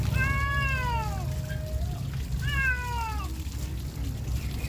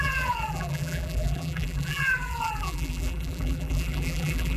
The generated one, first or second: second